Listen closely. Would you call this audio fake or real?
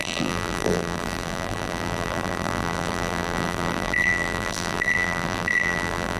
fake